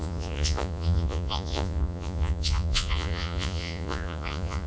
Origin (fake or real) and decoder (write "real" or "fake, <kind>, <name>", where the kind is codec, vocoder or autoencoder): fake, vocoder, Vocos